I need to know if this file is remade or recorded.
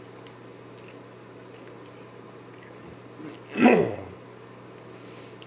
recorded